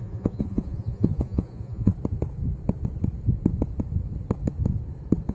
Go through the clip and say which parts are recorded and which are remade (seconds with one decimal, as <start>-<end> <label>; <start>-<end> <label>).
0.0-1.9 remade; 1.9-5.3 recorded